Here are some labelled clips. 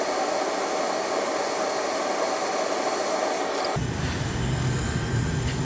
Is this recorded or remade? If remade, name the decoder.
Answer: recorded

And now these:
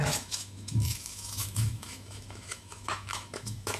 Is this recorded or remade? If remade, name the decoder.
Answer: remade, autoencoder, DAC-VAE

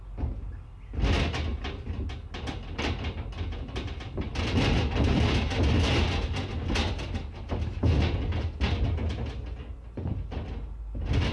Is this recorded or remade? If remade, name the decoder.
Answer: recorded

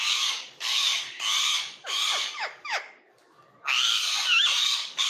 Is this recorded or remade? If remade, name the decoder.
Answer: remade, codec, DAC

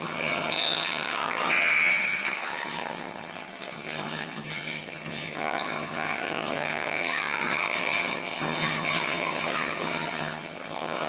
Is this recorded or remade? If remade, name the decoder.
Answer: remade, vocoder, HiFi-GAN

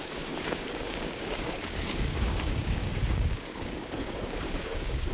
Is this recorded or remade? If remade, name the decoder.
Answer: remade, codec, DAC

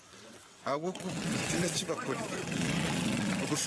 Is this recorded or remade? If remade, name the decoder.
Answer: remade, vocoder, WaveNeXt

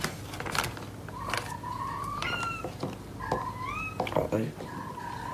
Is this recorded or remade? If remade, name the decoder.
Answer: recorded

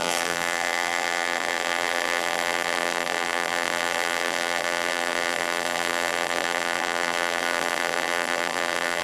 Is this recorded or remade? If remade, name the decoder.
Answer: remade, vocoder, BigVGAN v2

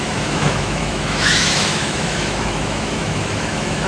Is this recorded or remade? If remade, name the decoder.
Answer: remade, autoencoder, DAC-VAE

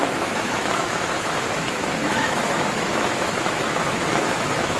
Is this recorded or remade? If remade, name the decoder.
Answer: remade, autoencoder, DAC-VAE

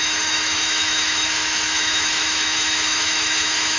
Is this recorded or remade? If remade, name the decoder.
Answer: remade, autoencoder, DAC-VAE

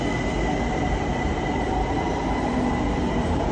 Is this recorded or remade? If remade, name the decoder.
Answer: remade, vocoder, BigVGAN v2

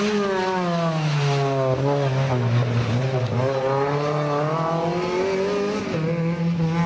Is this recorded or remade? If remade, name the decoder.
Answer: recorded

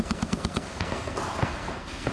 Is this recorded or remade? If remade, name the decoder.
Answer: remade, codec, SNAC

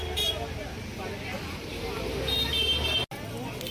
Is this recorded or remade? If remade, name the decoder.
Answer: recorded